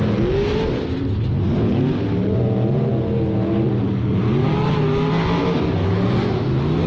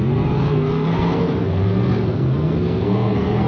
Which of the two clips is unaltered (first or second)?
first